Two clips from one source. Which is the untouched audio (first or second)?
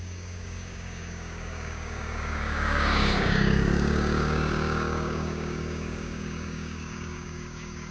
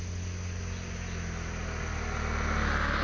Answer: second